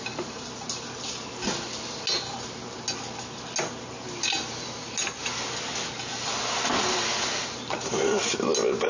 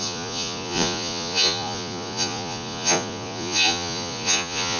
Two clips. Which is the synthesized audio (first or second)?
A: second